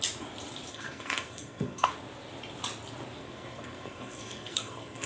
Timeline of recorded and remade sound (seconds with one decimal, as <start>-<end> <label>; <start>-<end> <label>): 0.0-0.7 recorded; 0.7-1.9 remade; 1.9-3.2 recorded; 3.2-5.1 remade